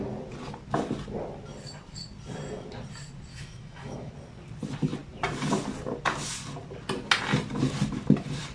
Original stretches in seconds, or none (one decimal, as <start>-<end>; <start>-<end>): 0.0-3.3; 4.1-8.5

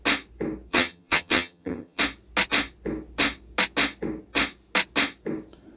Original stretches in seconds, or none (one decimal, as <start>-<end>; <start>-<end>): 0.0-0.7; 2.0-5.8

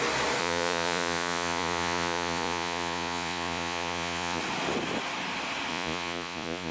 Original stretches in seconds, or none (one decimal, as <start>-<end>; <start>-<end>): 0.0-0.4; 4.4-5.7

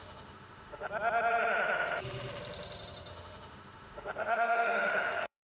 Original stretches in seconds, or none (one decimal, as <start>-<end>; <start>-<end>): 0.9-3.1

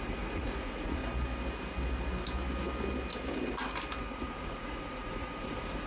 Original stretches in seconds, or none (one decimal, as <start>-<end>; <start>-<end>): 1.0-4.0

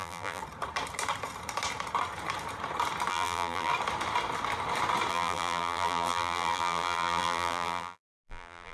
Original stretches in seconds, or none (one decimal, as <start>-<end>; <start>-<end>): 0.4-3.1; 3.7-5.1